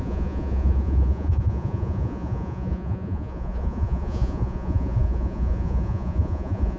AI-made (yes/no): yes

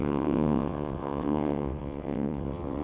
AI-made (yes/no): yes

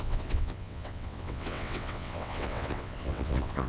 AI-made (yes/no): yes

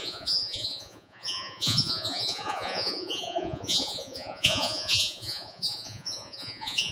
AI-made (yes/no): yes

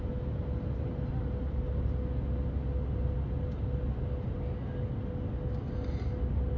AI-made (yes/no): no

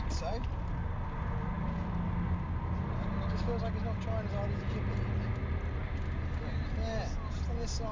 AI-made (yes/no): no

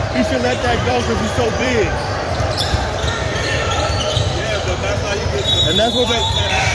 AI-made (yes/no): yes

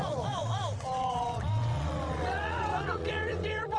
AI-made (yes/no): yes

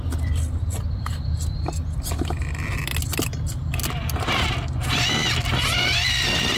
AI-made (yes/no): no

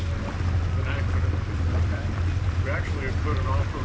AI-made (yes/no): yes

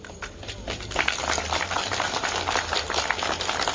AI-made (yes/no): no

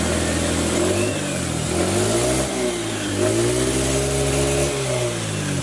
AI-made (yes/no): no